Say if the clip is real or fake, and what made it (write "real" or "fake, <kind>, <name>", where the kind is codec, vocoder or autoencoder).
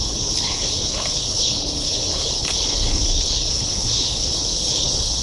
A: fake, codec, HILCodec